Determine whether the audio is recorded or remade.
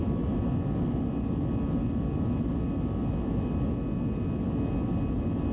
recorded